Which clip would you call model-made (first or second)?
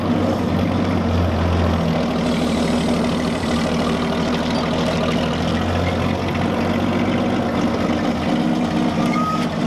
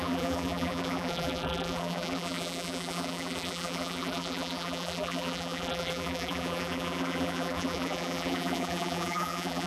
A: second